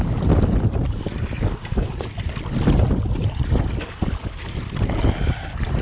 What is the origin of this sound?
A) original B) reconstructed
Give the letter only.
A